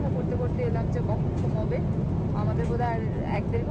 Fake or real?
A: real